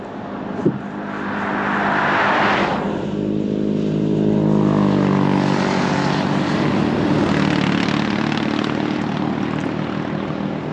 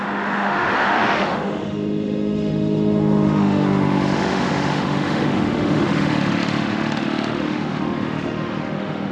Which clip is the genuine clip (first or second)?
first